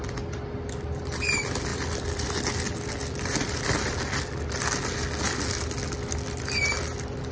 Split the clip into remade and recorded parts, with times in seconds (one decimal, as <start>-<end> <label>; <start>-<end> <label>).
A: 0.0-1.7 recorded; 1.7-2.3 remade; 2.3-3.0 recorded; 3.0-3.9 remade; 3.9-7.3 recorded